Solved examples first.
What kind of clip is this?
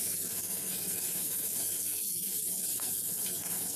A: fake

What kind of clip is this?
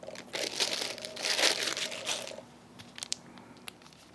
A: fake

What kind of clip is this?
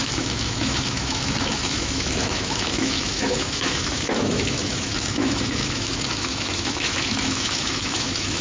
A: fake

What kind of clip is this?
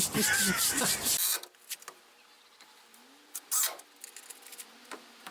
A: real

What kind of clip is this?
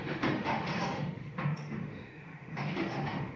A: fake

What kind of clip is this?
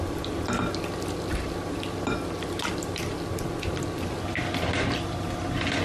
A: real